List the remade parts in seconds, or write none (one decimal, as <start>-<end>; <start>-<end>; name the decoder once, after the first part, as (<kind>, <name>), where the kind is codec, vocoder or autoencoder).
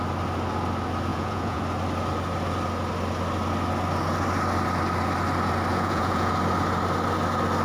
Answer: 1.1-1.6 (vocoder, Vocos); 5.7-6.3